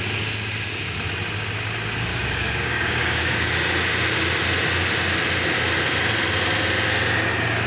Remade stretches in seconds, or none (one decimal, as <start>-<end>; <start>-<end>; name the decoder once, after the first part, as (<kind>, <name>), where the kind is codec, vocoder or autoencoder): 2.1-3.5 (codec, DAC)